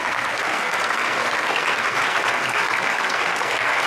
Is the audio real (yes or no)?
no